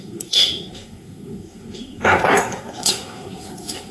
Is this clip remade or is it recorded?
remade